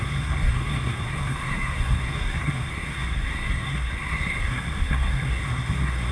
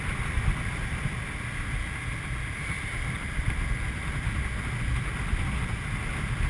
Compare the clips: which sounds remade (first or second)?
first